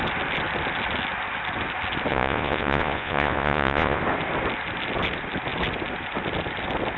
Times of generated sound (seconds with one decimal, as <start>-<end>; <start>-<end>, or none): 2.1-4.0